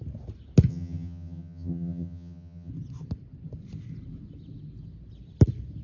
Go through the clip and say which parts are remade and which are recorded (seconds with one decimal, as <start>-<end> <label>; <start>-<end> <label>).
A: 0.0-0.7 recorded; 0.7-2.7 remade; 2.7-5.8 recorded